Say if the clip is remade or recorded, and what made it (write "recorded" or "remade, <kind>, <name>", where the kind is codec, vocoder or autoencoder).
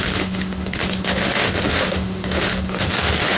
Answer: remade, autoencoder, DAC-VAE